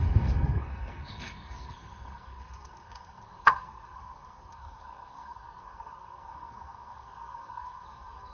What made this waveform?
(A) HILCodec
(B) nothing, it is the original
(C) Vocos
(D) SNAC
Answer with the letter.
D